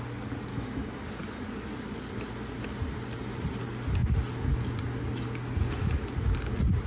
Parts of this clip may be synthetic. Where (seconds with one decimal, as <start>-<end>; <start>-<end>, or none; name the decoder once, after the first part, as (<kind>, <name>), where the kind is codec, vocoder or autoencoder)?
0.5-1.0 (autoencoder, DAC-VAE)